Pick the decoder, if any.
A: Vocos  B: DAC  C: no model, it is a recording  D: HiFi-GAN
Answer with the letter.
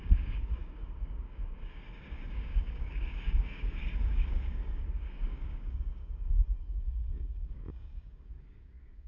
B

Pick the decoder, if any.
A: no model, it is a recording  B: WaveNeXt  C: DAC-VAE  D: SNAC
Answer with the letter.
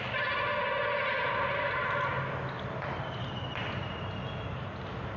A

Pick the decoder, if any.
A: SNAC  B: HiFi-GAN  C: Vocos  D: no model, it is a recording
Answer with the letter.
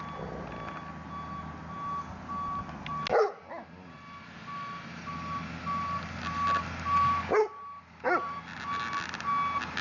D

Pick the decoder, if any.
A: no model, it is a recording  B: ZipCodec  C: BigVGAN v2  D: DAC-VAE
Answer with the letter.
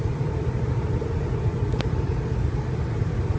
C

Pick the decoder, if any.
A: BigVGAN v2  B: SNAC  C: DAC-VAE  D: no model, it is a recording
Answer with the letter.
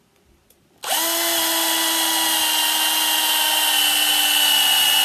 D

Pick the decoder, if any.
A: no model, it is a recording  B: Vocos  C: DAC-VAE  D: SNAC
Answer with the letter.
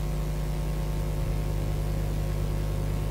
A